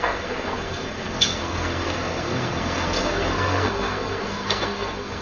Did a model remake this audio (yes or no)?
yes